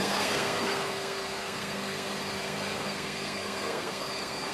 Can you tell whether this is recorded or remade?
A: remade